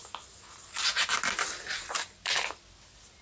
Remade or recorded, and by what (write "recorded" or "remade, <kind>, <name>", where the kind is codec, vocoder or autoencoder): recorded